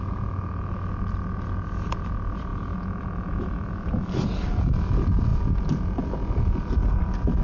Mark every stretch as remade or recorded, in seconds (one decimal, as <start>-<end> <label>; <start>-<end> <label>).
0.0-7.4 recorded